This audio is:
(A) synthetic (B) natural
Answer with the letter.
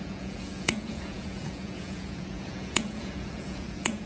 A